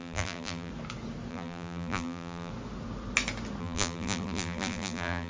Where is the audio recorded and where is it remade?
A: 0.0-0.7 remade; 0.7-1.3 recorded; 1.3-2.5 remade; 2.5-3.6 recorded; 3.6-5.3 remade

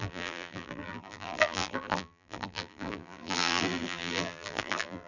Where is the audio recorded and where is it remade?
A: 0.0-5.1 remade